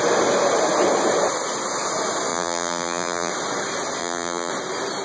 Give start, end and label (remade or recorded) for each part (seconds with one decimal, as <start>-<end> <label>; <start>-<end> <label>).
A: 0.0-2.3 recorded; 2.3-3.3 remade; 3.3-4.0 recorded; 4.0-4.5 remade; 4.5-5.0 recorded